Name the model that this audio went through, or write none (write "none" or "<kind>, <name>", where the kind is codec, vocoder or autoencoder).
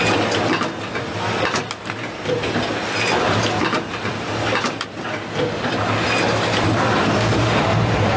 none